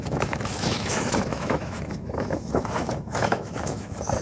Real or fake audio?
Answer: fake